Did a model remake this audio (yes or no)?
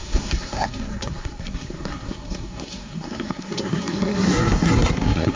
yes